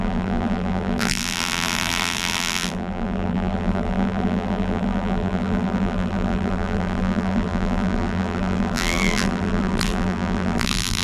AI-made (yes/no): yes